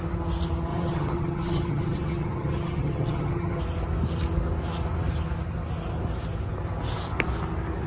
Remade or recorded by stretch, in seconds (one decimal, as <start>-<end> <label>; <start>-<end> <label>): 0.0-0.7 recorded; 0.7-3.6 remade; 3.6-7.9 recorded

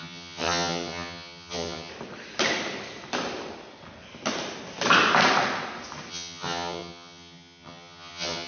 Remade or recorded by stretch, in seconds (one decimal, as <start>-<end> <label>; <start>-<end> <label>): 0.0-1.9 remade; 1.9-6.1 recorded; 6.1-8.5 remade

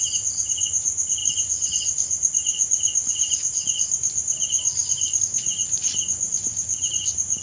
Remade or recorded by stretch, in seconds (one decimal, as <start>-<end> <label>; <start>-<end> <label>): 0.0-7.4 recorded

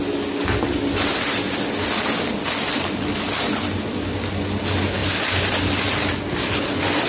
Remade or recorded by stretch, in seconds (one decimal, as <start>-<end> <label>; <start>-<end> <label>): 0.0-7.1 recorded

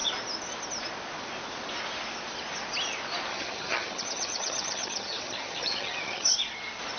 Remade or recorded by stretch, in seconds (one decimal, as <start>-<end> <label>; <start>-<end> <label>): 0.0-3.3 recorded; 3.3-6.3 remade; 6.3-7.0 recorded